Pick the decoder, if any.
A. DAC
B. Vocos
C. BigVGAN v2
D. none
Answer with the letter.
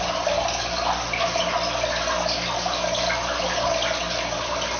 D